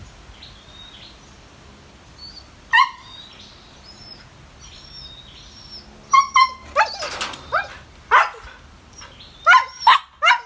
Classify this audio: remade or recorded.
recorded